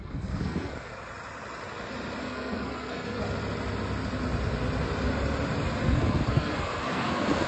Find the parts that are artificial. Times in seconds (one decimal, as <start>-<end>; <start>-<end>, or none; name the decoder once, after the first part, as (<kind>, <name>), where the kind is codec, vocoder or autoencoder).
0.0-0.9 (codec, SNAC); 2.2-3.2; 5.8-7.5